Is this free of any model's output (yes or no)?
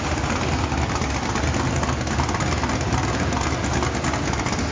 yes